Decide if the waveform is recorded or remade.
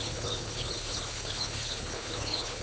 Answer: remade